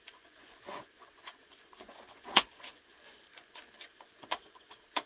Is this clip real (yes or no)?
no